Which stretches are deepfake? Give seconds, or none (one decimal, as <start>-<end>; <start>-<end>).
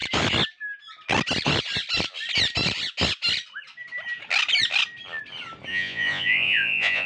5.7-7.1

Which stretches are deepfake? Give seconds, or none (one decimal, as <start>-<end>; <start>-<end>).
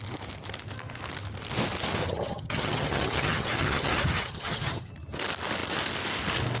2.0-4.9